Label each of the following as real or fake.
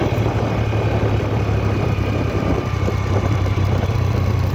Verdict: real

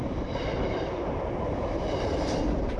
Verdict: fake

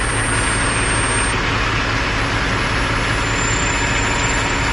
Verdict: real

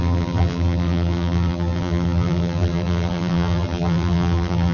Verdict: fake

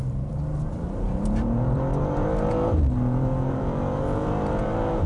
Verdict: fake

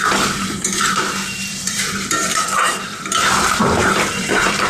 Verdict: fake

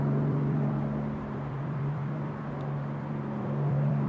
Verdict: fake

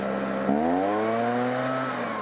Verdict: real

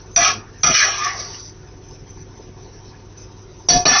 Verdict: real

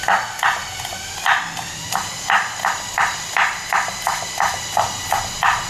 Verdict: real